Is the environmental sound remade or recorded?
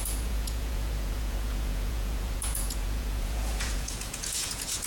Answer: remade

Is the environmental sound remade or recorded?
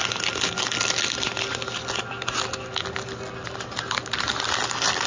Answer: recorded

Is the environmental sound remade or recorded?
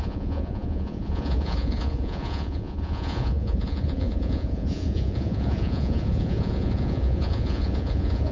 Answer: remade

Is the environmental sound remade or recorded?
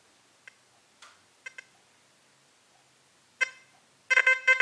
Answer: recorded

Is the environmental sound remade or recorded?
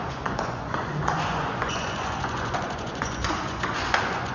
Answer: remade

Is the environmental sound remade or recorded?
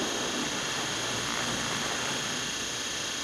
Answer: recorded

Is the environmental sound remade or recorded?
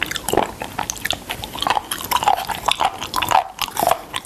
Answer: recorded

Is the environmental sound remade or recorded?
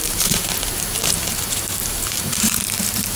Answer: remade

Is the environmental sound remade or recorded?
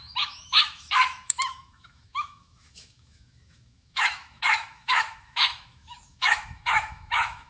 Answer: remade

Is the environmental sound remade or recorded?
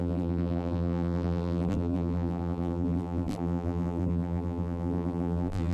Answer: remade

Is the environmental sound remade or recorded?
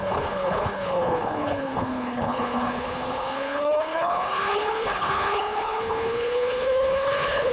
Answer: remade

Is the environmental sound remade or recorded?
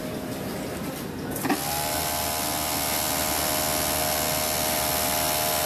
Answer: recorded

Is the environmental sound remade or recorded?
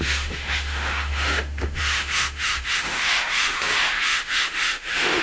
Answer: remade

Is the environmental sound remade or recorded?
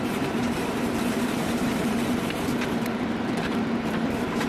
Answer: remade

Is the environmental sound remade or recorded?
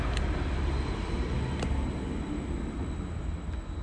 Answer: recorded